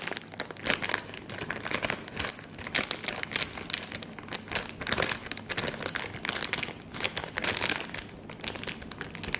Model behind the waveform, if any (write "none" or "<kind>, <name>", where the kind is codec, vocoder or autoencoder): none